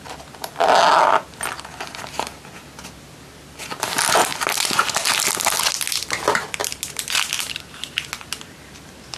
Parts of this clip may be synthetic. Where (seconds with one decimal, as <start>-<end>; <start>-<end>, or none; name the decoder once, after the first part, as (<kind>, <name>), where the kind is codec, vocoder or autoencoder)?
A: none